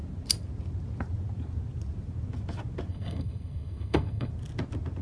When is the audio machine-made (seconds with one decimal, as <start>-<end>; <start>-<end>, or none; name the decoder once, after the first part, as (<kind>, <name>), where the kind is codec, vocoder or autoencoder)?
2.9-4.3 (codec, SNAC)